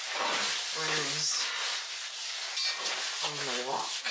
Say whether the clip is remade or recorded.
recorded